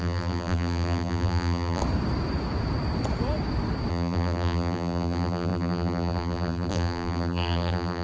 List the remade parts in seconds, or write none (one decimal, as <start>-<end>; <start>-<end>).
0.0-1.8; 3.9-8.0